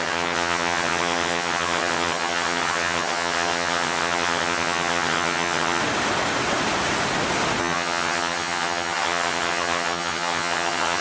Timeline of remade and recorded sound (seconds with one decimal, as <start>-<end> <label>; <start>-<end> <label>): 0.0-5.8 remade; 5.8-7.6 recorded; 7.6-11.0 remade